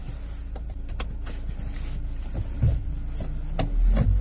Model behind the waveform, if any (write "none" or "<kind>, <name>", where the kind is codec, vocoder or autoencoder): none